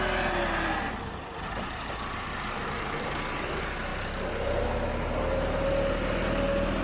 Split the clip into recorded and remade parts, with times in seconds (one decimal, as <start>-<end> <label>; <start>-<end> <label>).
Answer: 0.0-2.3 recorded; 2.3-3.1 remade; 3.1-6.8 recorded